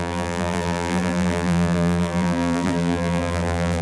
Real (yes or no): no